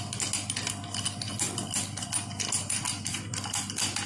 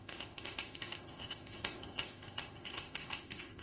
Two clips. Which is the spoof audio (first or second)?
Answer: second